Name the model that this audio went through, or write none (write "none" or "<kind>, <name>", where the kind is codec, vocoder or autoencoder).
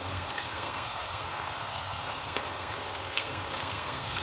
codec, SNAC